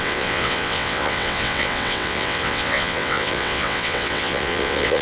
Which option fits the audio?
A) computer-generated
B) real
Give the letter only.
A